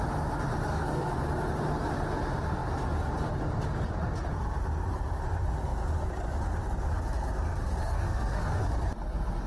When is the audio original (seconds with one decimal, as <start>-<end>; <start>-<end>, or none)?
0.0-0.7; 1.2-7.8; 8.7-9.5